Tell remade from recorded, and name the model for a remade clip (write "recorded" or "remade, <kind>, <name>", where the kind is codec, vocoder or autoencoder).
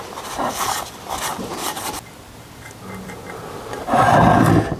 recorded